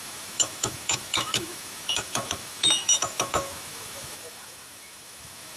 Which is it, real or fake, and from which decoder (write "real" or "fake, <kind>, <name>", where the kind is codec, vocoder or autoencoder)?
fake, autoencoder, DAC-VAE